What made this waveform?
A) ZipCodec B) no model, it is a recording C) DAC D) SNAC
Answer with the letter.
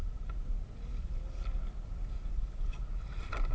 B